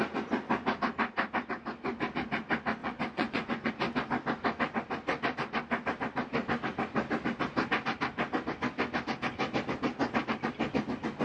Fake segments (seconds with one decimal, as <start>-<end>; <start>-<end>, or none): 2.8-3.7